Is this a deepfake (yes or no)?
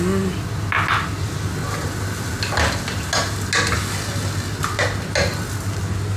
no